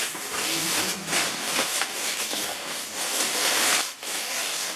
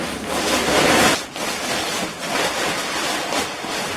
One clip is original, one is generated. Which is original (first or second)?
second